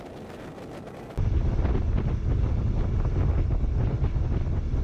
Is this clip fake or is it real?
real